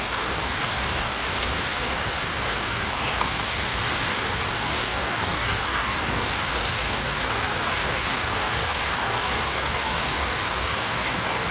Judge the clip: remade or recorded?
remade